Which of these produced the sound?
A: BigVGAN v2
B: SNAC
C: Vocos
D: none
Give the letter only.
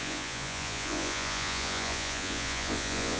C